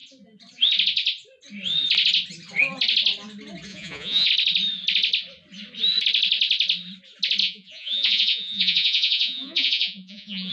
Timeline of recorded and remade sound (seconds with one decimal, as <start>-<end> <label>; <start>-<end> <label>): 0.0-3.7 recorded; 3.7-4.3 remade; 4.3-7.4 recorded; 7.4-10.5 remade